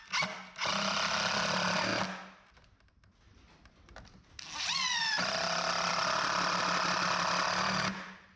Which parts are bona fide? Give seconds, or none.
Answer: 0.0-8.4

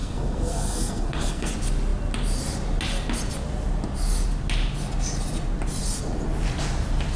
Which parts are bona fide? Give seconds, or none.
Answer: 1.5-7.2

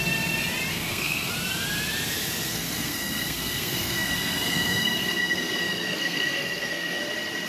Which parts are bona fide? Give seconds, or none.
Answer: 0.0-0.7; 1.3-2.5; 7.0-7.5